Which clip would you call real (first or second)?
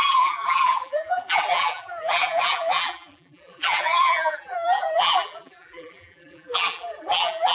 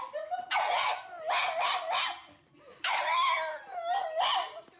second